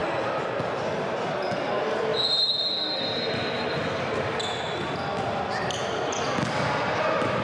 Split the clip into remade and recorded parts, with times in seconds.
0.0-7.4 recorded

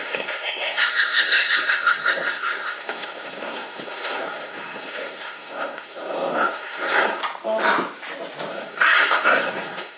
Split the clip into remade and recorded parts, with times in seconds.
0.0-7.2 remade; 7.2-8.5 recorded; 8.5-10.0 remade

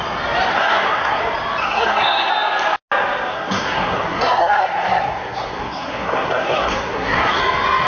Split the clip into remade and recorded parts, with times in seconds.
0.0-0.5 recorded; 0.5-1.2 remade; 1.2-1.6 recorded; 1.6-2.3 remade; 2.3-3.3 recorded; 3.3-7.4 remade; 7.4-7.9 recorded

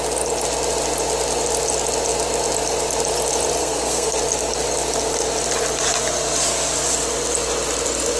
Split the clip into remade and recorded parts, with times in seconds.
0.0-3.6 recorded; 3.6-4.2 remade; 4.2-8.2 recorded

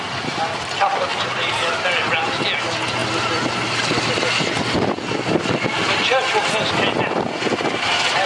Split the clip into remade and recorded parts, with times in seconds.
0.0-1.1 recorded; 1.1-1.7 remade; 1.7-3.0 recorded; 3.0-5.0 remade; 5.0-8.3 recorded